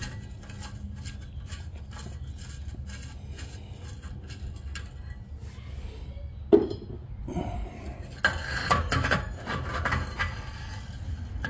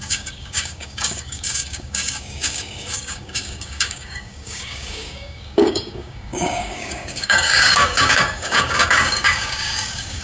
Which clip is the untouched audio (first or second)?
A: first